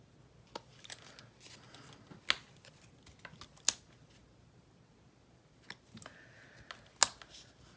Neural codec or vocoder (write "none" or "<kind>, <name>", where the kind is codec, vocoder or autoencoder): none